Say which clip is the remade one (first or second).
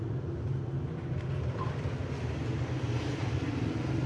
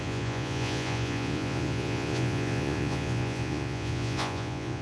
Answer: second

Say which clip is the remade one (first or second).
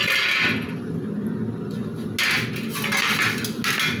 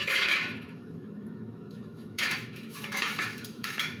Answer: second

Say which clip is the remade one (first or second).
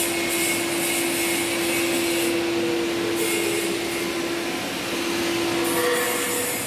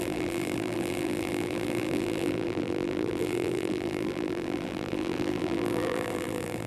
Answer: second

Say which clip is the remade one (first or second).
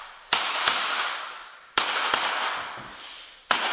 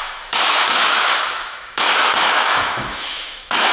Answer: second